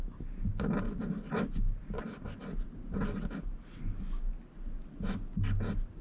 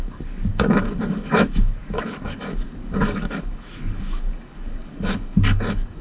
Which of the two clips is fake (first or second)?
second